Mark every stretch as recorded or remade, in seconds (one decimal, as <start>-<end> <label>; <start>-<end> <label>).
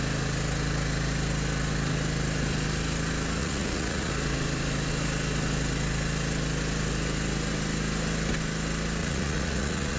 0.0-3.4 recorded; 3.4-4.1 remade; 4.1-9.0 recorded; 9.0-10.0 remade